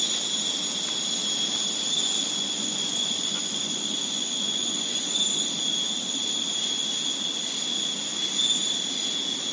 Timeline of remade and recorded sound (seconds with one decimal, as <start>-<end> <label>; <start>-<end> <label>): 0.0-2.0 recorded; 2.0-5.2 remade; 5.2-9.5 recorded